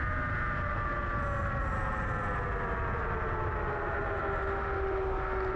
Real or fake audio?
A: real